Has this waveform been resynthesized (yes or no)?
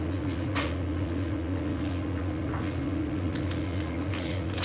yes